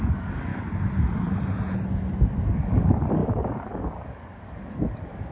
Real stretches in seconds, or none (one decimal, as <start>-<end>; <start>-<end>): 0.5-2.4